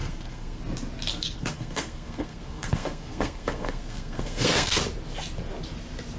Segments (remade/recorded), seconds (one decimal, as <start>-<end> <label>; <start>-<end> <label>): 0.0-0.6 remade; 0.6-1.1 recorded; 1.1-4.8 remade; 4.8-6.2 recorded